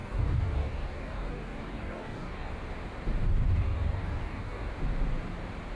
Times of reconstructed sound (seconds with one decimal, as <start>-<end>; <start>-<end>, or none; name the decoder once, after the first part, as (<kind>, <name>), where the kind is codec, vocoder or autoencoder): 0.0-2.5 (codec, DAC); 3.2-4.7